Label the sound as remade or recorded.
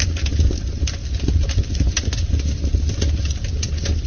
recorded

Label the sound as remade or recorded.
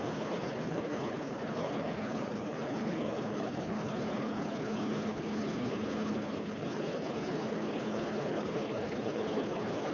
remade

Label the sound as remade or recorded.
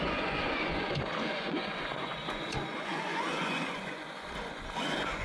remade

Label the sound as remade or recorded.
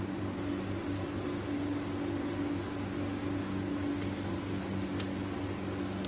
recorded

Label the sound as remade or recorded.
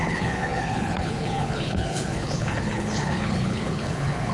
remade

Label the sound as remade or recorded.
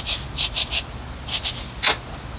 recorded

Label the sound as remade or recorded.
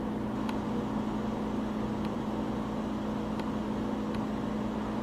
recorded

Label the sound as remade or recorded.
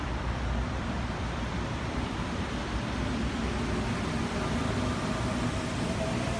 remade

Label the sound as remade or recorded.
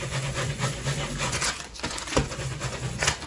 remade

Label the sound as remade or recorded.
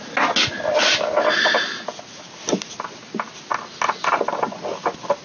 recorded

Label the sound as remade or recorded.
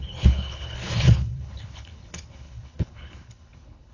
remade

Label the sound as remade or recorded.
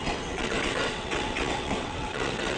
remade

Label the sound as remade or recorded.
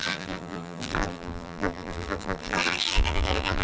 remade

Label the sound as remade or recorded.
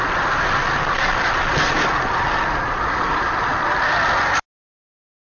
recorded